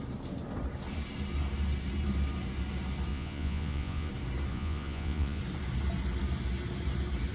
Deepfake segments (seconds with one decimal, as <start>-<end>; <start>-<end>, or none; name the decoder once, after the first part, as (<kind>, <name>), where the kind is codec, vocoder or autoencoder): 3.1-4.1 (vocoder, Vocos); 4.5-5.4